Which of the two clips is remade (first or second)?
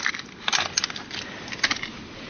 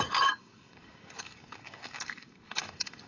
second